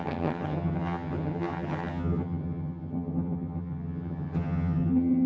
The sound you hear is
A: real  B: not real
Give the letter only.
B